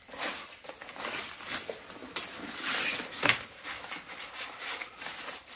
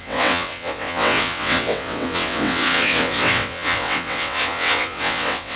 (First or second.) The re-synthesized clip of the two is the second